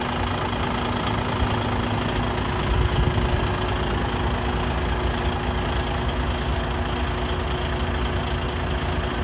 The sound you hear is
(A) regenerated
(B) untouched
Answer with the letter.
B